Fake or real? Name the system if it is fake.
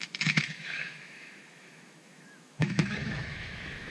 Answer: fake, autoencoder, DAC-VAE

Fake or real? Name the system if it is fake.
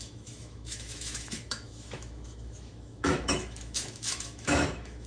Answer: fake, autoencoder, DAC-VAE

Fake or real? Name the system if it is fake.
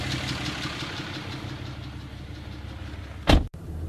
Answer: real